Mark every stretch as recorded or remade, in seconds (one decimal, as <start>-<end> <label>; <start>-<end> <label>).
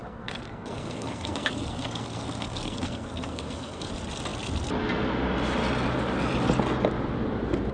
0.0-3.9 remade; 3.9-7.7 recorded